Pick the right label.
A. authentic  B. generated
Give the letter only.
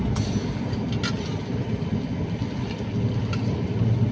A